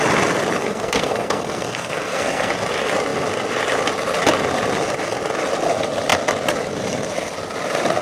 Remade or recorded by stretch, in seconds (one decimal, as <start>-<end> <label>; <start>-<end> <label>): 0.0-0.6 recorded; 0.6-2.5 remade; 2.5-8.0 recorded